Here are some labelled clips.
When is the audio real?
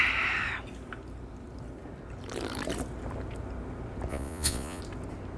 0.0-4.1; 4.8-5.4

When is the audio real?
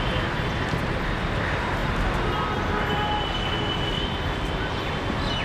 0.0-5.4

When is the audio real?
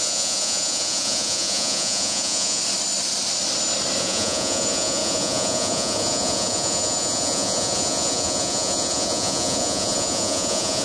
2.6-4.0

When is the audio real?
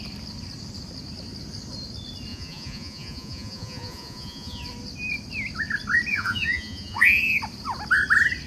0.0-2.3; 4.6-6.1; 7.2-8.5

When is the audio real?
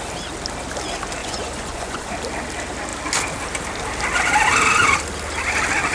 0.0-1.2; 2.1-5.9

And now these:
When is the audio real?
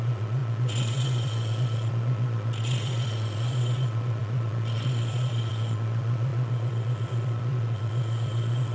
none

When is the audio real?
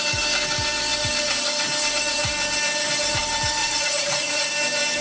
0.0-3.6; 4.5-5.0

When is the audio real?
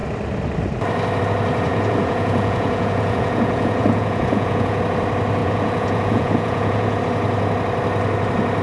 0.0-1.7; 4.8-5.4; 7.0-8.6